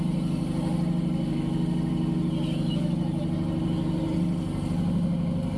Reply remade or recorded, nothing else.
recorded